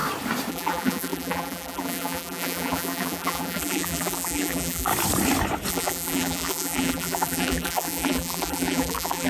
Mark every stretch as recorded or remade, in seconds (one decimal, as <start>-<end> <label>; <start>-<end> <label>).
0.0-0.5 recorded; 0.5-4.9 remade; 4.9-5.7 recorded; 5.7-9.3 remade